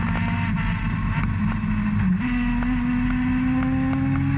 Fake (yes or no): no